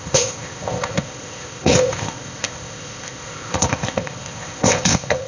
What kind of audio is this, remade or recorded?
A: remade